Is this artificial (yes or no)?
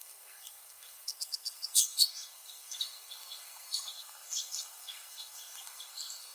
yes